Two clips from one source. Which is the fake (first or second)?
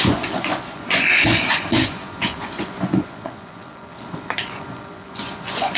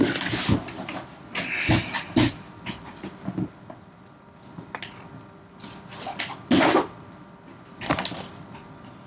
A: first